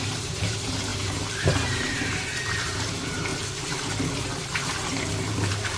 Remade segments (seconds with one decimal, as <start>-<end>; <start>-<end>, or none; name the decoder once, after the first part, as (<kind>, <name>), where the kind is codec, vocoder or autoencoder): 0.0-3.3 (vocoder, BigVGAN v2); 5.1-5.8